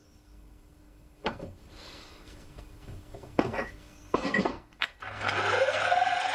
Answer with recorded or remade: remade